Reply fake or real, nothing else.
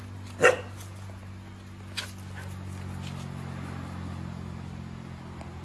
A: real